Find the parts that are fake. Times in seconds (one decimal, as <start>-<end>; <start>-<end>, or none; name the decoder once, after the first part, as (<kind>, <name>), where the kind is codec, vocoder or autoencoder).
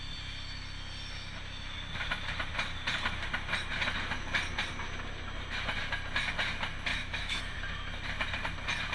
6.9-7.4 (autoencoder, DAC-VAE)